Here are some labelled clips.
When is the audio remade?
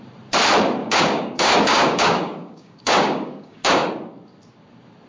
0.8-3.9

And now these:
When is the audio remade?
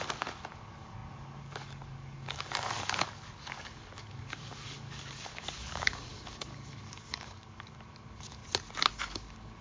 0.0-8.4; 9.1-9.6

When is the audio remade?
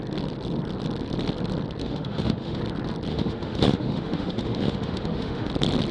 1.8-2.6; 3.1-5.5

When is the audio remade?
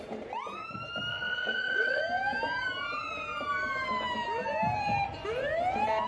1.1-2.0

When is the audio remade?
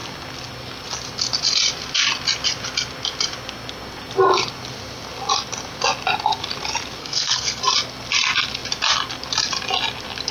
7.0-7.6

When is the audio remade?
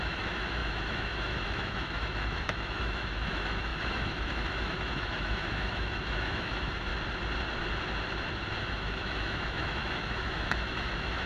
0.0-6.9; 8.6-11.3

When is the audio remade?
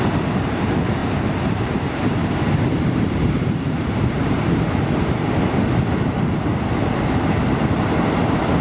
1.0-5.4